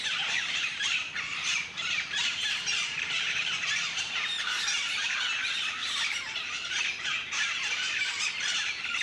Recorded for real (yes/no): no